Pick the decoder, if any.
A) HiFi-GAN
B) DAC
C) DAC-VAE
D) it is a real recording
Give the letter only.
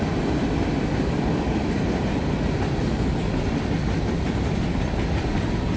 D